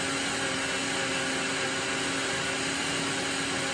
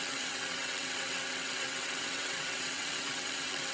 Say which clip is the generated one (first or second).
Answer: second